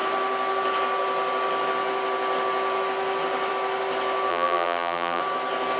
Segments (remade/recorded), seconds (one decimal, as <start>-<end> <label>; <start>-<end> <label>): 0.0-4.3 recorded; 4.3-5.2 remade; 5.2-5.8 recorded

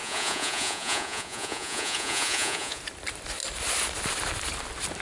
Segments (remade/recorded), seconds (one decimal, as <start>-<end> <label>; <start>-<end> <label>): 0.0-2.8 remade; 2.8-5.0 recorded

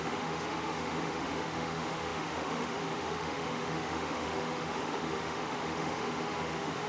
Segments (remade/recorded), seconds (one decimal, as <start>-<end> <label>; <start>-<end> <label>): 0.0-6.9 remade

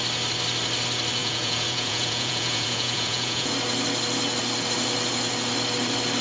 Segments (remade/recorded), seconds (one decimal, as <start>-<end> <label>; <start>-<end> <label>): 0.0-1.2 recorded; 1.2-3.5 remade; 3.5-6.2 recorded

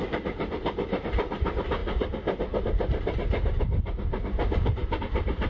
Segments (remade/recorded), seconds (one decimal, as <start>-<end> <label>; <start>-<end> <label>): 0.0-1.8 remade; 1.8-5.0 recorded; 5.0-5.5 remade

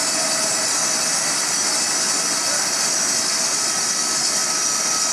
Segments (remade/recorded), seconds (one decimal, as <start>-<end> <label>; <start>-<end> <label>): 0.0-5.1 recorded

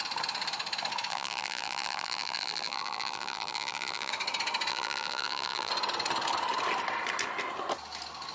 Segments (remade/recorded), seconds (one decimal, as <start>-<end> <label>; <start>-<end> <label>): 0.0-1.1 recorded; 1.1-4.1 remade; 4.1-4.7 recorded; 4.7-5.7 remade; 5.7-8.3 recorded

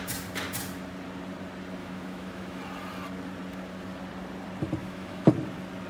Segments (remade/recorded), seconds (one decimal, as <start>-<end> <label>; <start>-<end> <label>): 0.0-1.8 recorded; 1.8-2.6 remade; 2.6-4.8 recorded; 4.8-5.3 remade; 5.3-5.9 recorded